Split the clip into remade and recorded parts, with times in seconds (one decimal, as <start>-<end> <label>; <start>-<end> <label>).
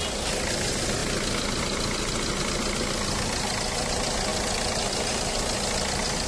0.0-6.3 recorded